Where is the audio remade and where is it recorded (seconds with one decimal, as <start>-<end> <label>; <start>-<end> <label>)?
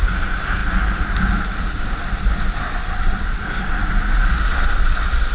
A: 0.0-2.8 recorded; 2.8-3.9 remade; 3.9-5.3 recorded